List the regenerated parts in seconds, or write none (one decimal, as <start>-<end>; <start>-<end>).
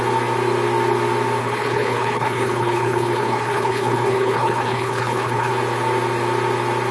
1.4-5.5